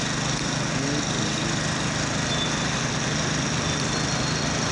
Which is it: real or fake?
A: real